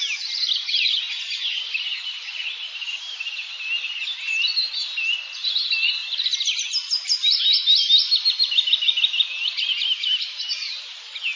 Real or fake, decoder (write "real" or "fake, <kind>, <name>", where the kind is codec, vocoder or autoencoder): real